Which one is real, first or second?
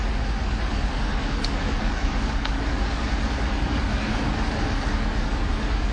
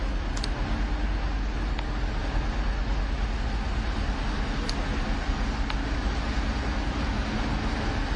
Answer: second